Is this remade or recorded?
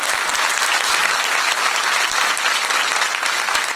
recorded